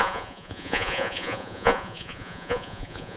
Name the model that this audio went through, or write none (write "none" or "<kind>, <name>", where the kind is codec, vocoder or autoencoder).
vocoder, Vocos